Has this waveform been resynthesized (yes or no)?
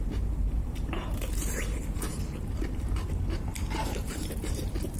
yes